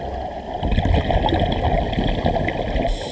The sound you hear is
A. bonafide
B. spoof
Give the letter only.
A